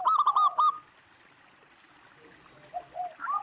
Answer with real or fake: real